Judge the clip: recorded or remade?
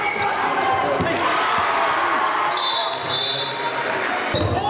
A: recorded